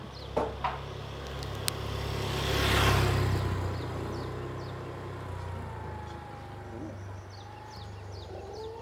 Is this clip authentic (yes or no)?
yes